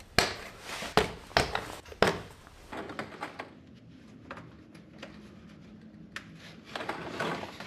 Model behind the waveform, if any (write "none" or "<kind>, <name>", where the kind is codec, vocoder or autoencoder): none